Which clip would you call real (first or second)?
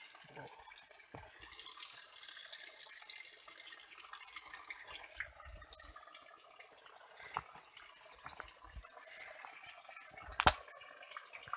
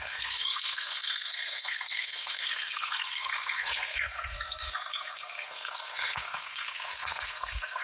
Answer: first